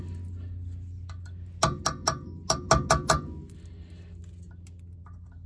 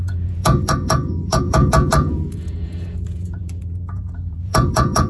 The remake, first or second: second